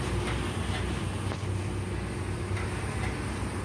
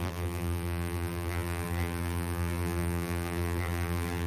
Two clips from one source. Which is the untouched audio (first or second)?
first